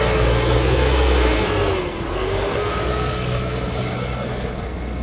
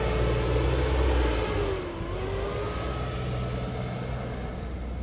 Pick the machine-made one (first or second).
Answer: first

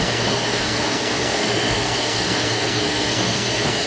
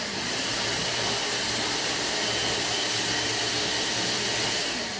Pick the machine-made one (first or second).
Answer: first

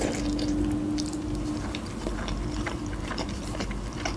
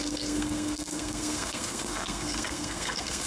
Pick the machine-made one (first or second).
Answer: second